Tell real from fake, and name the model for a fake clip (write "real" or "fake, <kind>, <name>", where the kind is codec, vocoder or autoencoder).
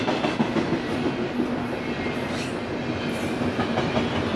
real